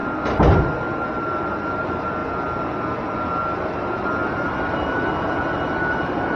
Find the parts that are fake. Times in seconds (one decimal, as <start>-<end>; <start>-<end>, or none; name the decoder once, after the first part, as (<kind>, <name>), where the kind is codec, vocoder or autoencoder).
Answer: 0.9-2.2 (vocoder, BigVGAN v2); 3.1-6.4